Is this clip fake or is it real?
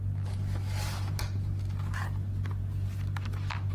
real